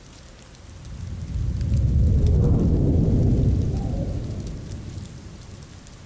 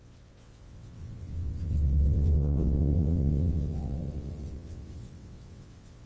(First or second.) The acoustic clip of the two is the first